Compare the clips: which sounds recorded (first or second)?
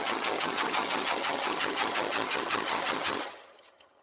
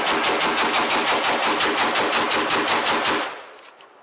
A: second